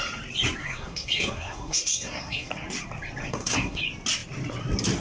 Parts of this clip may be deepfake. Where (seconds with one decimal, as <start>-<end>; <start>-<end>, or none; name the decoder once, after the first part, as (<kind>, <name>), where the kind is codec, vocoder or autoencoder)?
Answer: 0.6-2.5 (codec, SNAC); 3.2-3.8